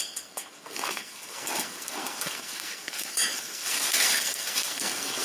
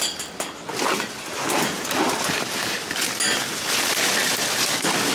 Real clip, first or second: second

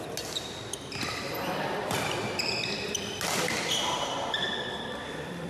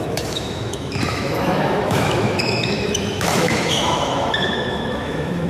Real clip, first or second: first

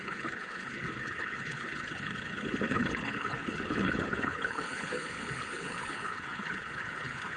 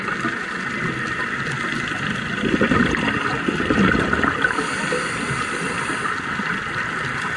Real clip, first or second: second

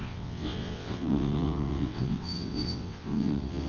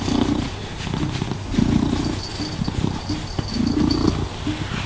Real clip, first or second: second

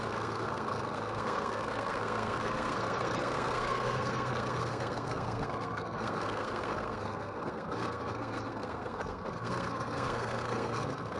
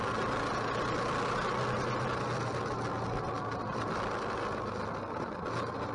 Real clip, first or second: second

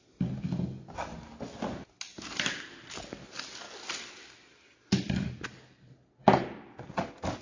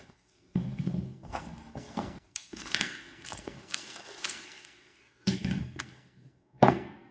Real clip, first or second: first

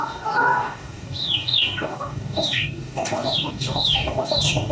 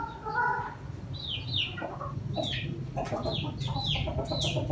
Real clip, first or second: second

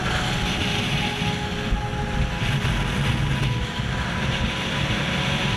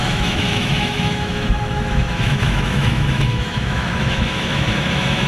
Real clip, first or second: first